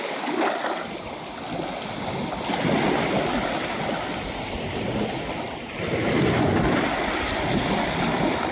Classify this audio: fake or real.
real